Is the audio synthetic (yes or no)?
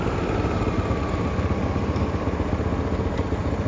no